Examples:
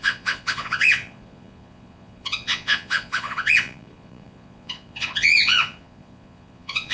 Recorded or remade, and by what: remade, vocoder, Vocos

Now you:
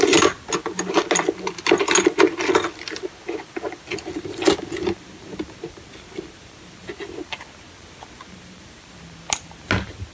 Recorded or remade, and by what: recorded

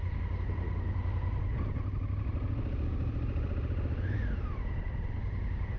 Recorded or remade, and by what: recorded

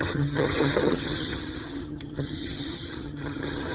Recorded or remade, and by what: remade, vocoder, HiFi-GAN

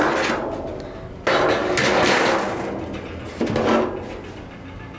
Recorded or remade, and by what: recorded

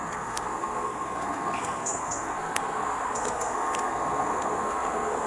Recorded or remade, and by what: remade, codec, SNAC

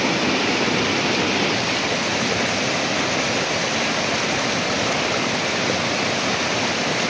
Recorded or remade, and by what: recorded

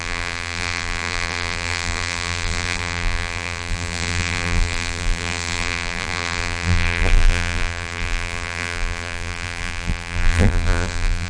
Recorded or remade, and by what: remade, vocoder, BigVGAN v2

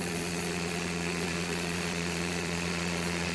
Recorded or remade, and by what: remade, vocoder, Vocos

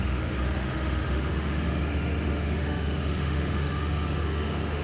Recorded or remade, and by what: remade, autoencoder, DAC-VAE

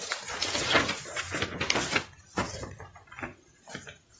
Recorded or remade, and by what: recorded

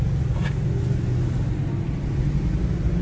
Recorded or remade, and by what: recorded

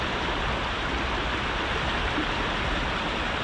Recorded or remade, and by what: recorded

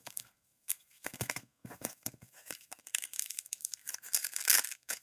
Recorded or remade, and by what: remade, codec, SNAC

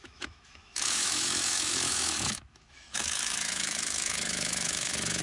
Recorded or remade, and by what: remade, autoencoder, DAC-VAE